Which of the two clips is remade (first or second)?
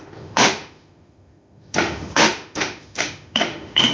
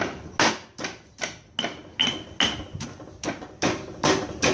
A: first